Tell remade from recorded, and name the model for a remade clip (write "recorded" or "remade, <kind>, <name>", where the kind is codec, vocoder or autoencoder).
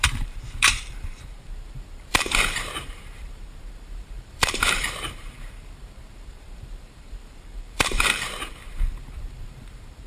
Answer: remade, vocoder, BigVGAN v2